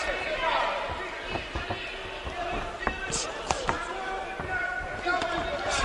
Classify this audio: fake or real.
real